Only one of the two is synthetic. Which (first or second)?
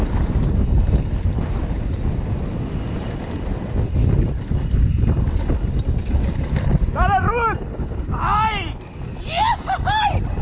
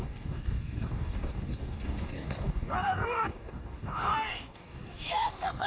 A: second